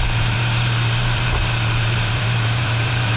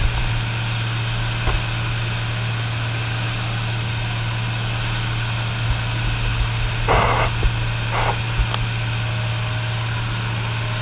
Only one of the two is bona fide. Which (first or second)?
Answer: second